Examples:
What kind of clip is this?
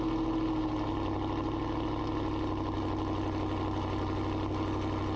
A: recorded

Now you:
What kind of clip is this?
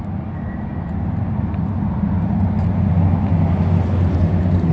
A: recorded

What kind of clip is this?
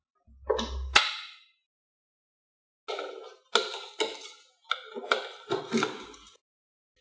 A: recorded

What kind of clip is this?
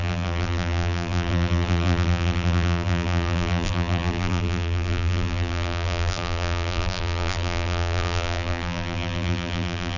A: remade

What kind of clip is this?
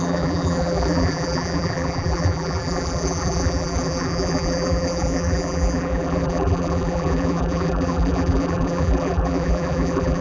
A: remade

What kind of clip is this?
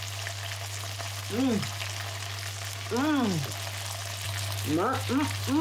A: recorded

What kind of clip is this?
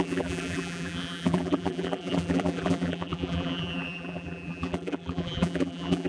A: remade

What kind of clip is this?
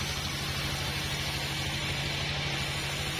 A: recorded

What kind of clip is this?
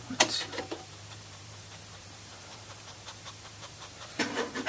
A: remade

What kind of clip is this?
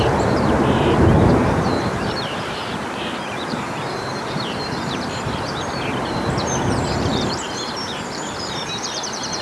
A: remade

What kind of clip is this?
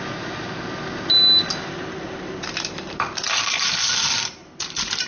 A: recorded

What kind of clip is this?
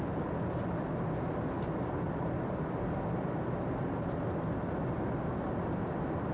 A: recorded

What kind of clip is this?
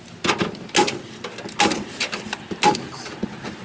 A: recorded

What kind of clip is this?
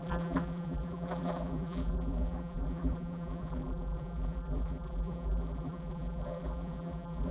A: remade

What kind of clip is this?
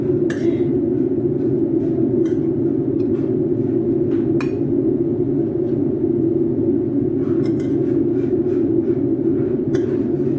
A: recorded